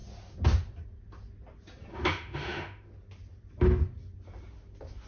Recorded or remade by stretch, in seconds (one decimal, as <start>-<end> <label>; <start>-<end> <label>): 0.0-1.9 recorded; 1.9-2.9 remade; 2.9-5.1 recorded

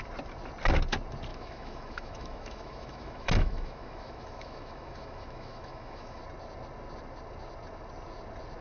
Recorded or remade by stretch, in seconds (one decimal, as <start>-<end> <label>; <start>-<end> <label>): 0.0-1.3 recorded; 1.3-6.2 remade; 6.2-8.6 recorded

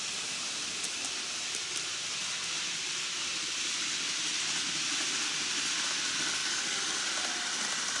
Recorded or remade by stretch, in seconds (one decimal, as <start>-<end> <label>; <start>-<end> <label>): 0.0-6.4 recorded; 6.4-7.0 remade; 7.0-8.0 recorded

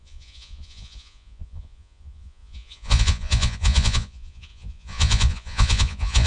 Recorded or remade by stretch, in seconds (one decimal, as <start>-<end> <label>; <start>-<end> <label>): 0.0-6.3 remade

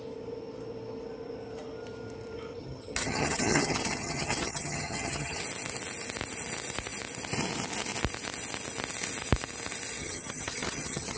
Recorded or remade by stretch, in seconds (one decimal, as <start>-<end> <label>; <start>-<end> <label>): 0.0-2.6 recorded; 2.6-5.4 remade; 5.4-10.0 recorded; 10.0-11.2 remade

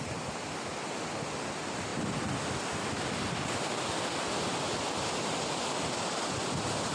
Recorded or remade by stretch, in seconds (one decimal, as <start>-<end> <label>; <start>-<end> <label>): 0.0-6.9 recorded

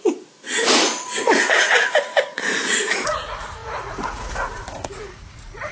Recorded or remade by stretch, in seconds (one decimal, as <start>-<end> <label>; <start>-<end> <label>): 0.0-5.7 remade